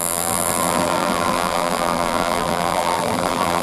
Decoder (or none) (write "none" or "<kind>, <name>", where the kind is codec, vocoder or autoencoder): vocoder, BigVGAN v2